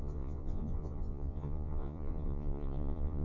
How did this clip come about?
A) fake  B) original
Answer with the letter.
A